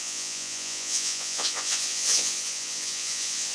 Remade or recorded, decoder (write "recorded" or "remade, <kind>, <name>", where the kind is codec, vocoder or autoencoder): remade, vocoder, Vocos